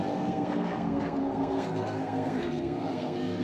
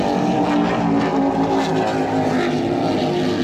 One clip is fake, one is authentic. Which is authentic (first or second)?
second